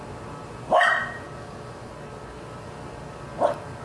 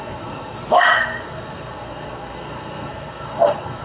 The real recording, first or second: first